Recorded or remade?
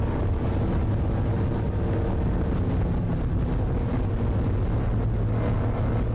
recorded